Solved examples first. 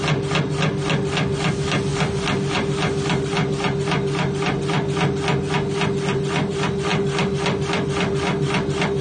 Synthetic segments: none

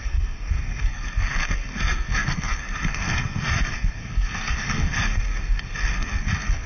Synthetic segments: 0.0-6.7 (codec, SNAC)

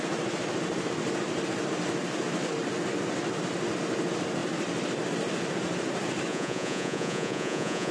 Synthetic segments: 6.3-7.9 (vocoder, Vocos)

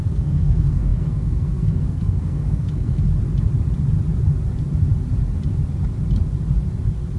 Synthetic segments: 0.0-3.1 (codec, SNAC)

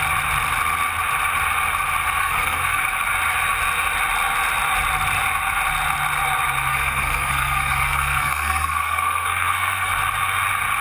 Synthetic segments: 2.2-2.8 (codec, SNAC); 6.7-9.9

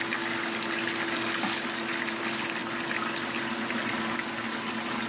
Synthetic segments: none

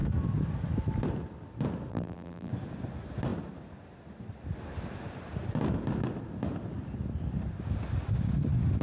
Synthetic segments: 1.9-2.5 (vocoder, BigVGAN v2)

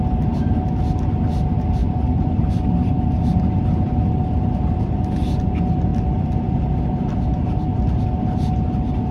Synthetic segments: 1.8-2.5 (vocoder, BigVGAN v2); 5.9-6.6